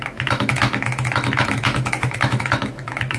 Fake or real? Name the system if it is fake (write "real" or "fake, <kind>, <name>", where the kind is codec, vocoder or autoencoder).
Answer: fake, autoencoder, DAC-VAE